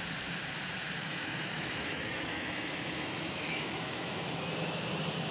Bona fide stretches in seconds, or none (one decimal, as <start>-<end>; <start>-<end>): 0.0-1.0; 4.2-5.3

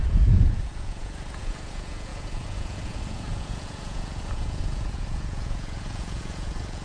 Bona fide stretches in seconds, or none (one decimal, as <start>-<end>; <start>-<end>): none

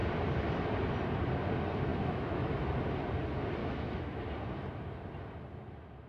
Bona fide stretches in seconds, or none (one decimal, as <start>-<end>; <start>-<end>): 0.0-1.9; 2.7-3.6; 4.2-6.1

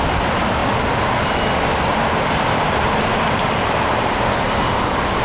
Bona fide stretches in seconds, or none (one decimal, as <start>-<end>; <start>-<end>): none